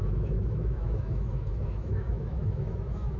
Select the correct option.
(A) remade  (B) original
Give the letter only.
A